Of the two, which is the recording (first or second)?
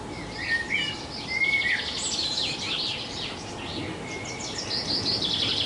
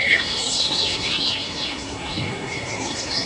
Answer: first